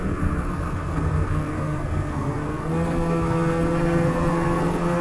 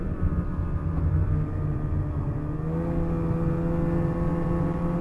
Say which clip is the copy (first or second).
first